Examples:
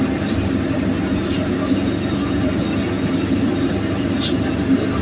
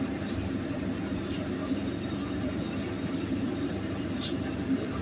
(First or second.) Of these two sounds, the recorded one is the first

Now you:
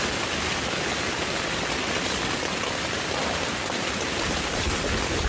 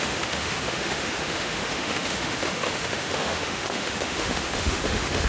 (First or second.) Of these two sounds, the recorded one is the first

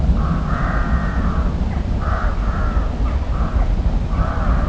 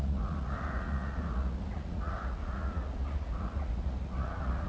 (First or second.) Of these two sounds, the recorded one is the first